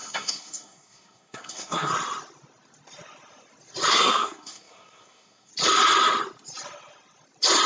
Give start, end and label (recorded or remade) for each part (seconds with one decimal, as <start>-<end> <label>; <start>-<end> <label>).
0.0-1.9 remade; 1.9-3.9 recorded; 3.9-5.5 remade; 5.5-7.7 recorded